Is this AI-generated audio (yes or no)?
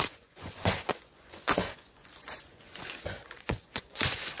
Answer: yes